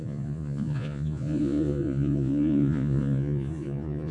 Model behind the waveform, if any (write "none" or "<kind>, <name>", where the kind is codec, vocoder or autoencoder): vocoder, Vocos